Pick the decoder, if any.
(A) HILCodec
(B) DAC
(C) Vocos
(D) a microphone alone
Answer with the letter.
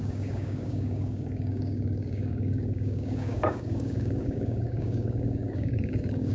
B